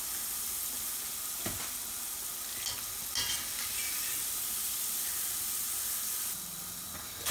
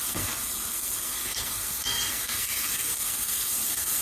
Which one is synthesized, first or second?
second